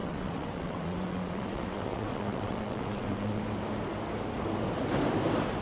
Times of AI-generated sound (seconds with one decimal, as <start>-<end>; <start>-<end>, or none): 0.0-3.4